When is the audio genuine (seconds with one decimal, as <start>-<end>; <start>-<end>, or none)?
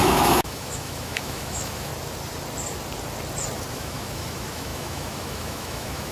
1.9-3.7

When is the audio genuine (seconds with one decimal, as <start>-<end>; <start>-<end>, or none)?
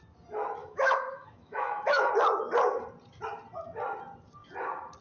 0.0-0.6; 2.1-5.0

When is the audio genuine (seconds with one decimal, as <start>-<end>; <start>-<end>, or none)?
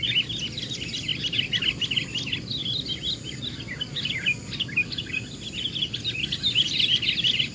0.0-7.5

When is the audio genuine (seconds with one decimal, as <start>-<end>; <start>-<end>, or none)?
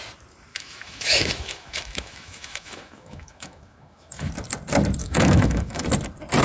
0.0-0.5; 4.3-5.0; 5.8-6.4